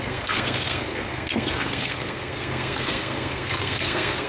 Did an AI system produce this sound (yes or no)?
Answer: yes